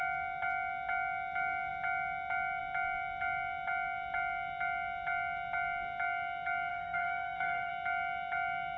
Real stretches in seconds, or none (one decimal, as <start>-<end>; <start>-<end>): 0.0-6.7; 7.7-8.8